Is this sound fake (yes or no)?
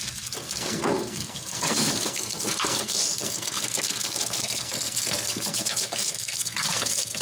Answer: yes